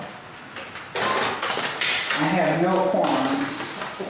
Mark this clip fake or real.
real